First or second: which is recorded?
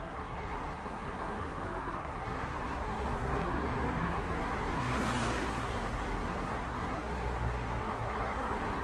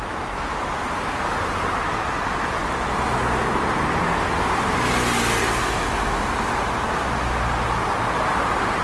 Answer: second